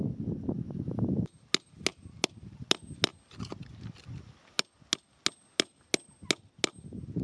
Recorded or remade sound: recorded